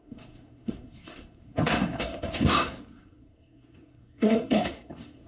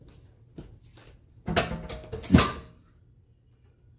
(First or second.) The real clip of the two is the second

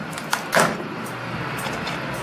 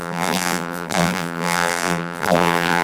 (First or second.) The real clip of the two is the first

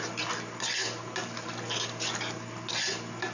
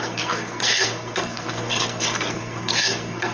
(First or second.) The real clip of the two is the first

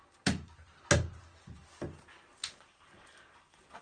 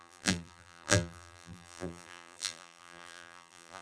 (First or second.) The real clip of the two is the first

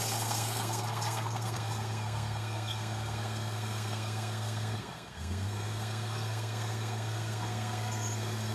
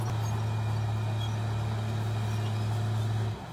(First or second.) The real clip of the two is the second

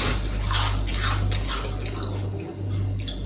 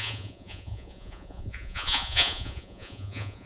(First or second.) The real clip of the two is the first